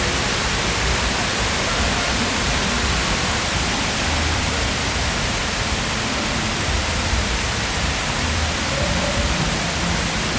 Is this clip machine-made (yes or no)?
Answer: yes